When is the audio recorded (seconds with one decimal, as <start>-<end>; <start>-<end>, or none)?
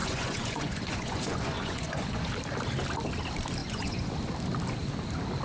2.3-3.6; 4.1-5.4